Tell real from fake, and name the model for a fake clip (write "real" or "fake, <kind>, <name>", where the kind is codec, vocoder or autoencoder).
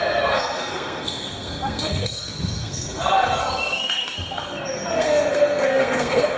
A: fake, codec, SNAC